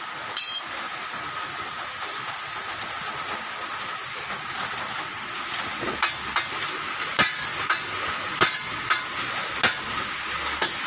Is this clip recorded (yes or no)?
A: yes